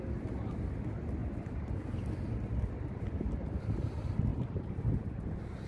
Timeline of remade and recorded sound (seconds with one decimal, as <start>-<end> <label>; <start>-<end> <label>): 0.0-4.3 recorded; 4.3-5.7 remade